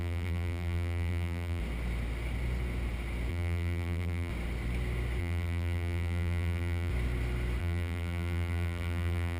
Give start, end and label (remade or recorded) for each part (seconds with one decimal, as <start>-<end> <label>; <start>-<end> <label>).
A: 0.0-1.6 remade; 1.6-3.3 recorded; 3.3-4.3 remade; 4.3-5.2 recorded; 5.2-6.9 remade; 6.9-7.6 recorded; 7.6-9.4 remade